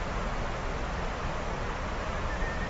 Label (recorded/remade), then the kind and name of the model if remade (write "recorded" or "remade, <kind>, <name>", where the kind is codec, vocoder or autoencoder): recorded